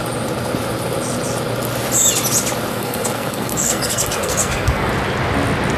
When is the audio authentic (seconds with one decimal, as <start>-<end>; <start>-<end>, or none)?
0.0-2.7; 4.9-5.8